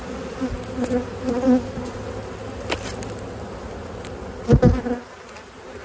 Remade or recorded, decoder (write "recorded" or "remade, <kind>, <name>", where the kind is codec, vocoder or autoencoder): recorded